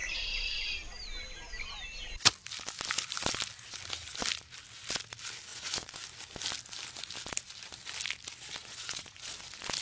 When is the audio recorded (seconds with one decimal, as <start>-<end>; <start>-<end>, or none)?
0.0-5.5; 6.0-8.6; 9.3-9.8